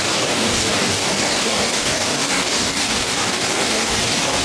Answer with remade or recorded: remade